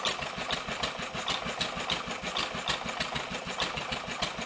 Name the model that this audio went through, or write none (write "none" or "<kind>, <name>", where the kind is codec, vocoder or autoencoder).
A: none